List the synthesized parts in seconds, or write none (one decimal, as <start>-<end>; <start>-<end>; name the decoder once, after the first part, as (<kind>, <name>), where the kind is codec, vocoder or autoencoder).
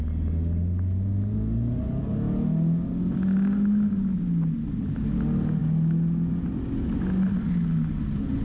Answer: none